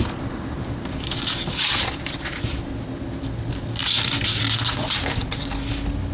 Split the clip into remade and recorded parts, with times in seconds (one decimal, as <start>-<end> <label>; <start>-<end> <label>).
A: 0.0-6.1 recorded

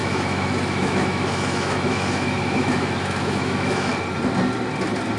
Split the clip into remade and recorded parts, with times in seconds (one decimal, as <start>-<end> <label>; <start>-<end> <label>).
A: 0.0-3.9 remade; 3.9-5.2 recorded